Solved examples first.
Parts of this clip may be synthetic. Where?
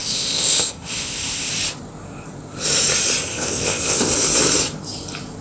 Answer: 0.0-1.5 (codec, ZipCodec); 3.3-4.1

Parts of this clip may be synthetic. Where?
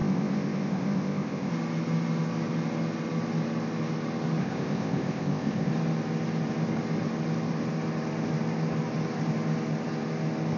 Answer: 0.0-1.5 (codec, ZipCodec); 4.4-5.7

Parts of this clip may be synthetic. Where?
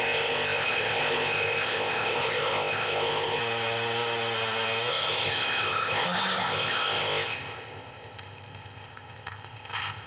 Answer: 0.0-3.4 (codec, ZipCodec); 4.9-10.1